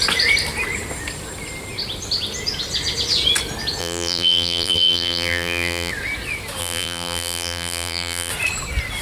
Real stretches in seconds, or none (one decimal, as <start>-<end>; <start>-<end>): 0.0-3.8; 5.9-6.6; 8.3-9.0